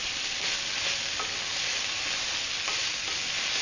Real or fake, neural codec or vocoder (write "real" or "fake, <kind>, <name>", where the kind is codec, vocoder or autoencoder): real